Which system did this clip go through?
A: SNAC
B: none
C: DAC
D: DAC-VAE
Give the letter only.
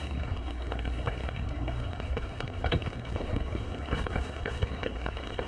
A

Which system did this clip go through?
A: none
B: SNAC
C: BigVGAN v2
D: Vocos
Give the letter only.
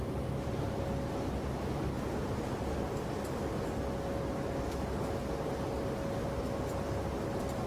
A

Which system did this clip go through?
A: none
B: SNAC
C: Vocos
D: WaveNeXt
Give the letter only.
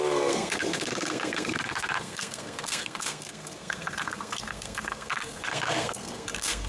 B